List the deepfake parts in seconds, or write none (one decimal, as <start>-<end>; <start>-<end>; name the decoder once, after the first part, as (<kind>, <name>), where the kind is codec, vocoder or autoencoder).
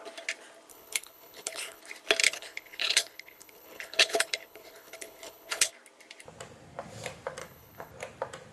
0.7-1.8 (codec, HILCodec); 2.2-5.7; 7.4-7.9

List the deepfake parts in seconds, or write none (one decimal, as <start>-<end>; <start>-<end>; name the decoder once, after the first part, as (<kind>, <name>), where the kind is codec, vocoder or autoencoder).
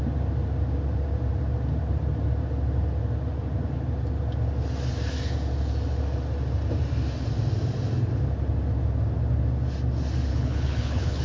10.3-11.2 (codec, HILCodec)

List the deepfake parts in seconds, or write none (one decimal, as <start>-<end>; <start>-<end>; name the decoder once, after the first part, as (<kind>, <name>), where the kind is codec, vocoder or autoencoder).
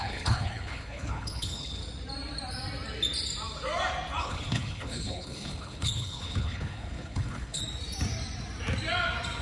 0.0-1.8 (codec, HILCodec); 4.2-7.6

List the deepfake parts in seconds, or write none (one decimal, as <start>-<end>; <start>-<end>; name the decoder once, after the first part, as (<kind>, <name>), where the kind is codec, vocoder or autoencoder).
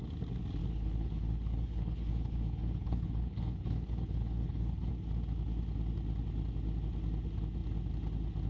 0.6-4.9 (codec, HILCodec)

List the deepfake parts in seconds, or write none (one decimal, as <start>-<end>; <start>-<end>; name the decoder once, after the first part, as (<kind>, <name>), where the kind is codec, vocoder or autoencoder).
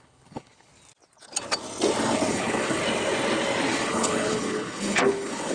0.0-0.7 (codec, HILCodec); 2.3-2.8; 3.7-5.5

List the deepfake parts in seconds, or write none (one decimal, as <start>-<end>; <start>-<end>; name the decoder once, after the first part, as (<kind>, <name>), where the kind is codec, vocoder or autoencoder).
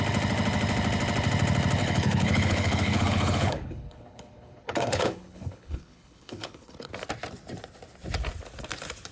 1.8-6.9 (codec, HILCodec)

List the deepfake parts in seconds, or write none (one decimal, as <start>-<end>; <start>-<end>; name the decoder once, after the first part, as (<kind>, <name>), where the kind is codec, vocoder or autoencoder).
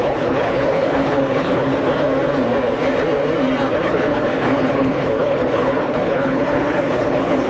0.0-1.7 (codec, HILCodec); 3.8-7.5